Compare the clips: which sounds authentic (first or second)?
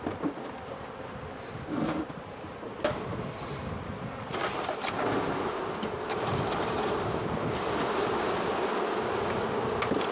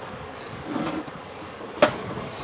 first